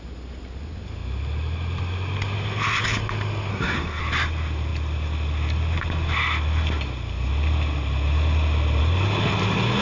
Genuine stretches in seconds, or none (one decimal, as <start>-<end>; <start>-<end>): 0.0-3.5; 4.0-9.8